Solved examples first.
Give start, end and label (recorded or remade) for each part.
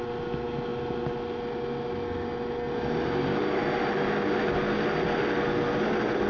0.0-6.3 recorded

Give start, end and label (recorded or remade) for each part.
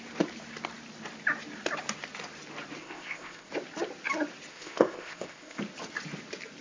0.0-2.8 recorded; 2.8-3.5 remade; 3.5-4.5 recorded; 4.5-5.6 remade; 5.6-6.6 recorded